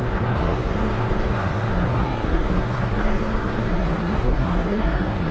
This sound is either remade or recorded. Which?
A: remade